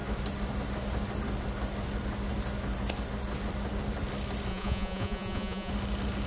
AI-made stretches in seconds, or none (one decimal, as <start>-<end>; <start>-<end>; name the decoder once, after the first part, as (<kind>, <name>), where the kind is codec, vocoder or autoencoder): 4.5-5.7 (vocoder, Vocos)